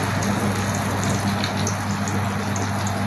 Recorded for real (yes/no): yes